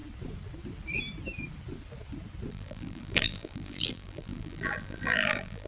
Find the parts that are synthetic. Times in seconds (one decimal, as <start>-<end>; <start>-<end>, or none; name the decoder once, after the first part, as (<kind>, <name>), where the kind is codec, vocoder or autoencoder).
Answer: 2.5-5.7 (vocoder, BigVGAN v2)